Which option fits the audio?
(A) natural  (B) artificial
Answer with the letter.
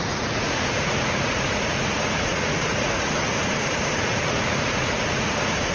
B